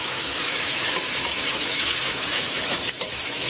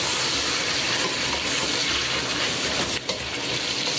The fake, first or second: first